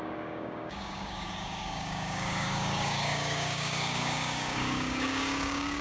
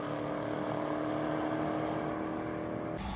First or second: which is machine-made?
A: first